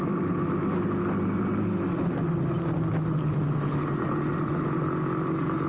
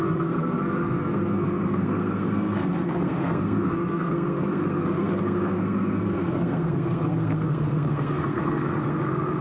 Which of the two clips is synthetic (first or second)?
second